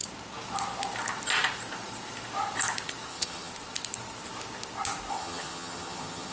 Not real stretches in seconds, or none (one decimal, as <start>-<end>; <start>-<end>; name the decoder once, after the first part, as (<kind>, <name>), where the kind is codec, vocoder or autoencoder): 3.1-3.5 (vocoder, HiFi-GAN); 5.1-6.3